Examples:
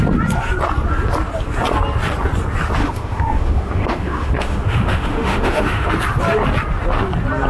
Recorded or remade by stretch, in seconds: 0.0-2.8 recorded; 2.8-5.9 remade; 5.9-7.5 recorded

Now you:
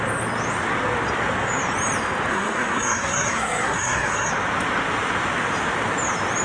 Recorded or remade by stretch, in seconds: 0.0-2.3 recorded; 2.3-4.3 remade; 4.3-6.4 recorded

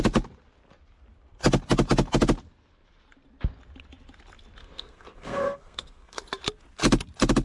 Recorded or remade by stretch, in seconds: 0.0-4.6 recorded; 4.6-6.2 remade; 6.2-7.4 recorded

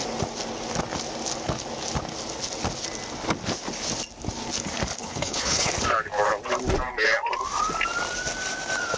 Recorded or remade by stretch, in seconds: 0.0-5.0 recorded; 5.0-5.7 remade; 5.7-9.0 recorded

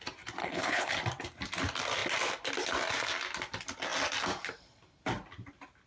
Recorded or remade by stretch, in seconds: 0.0-0.4 recorded; 0.4-0.9 remade; 0.9-5.9 recorded

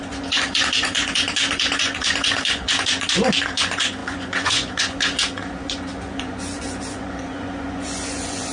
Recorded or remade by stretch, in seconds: 0.0-8.5 remade